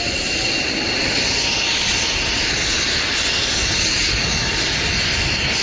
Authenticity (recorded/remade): recorded